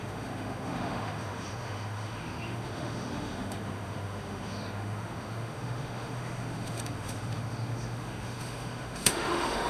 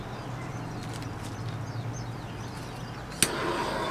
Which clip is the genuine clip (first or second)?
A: second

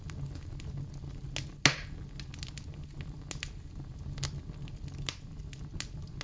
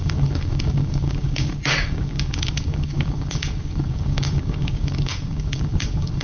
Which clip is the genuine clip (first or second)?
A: first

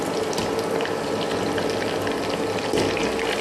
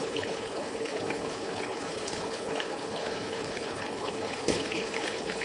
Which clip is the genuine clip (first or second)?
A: first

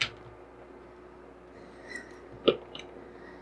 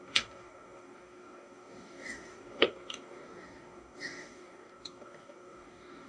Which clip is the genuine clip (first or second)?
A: first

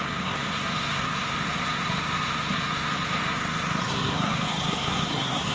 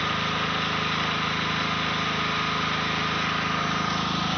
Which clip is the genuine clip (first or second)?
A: second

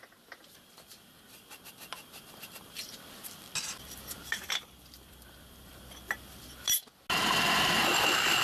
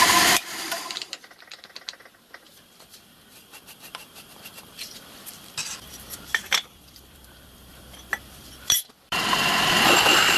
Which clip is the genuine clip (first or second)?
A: first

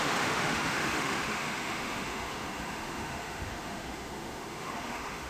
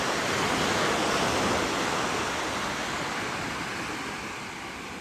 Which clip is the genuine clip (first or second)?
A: second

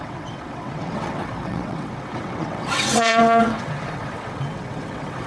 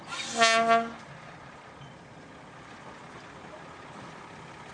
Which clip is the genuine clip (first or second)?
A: second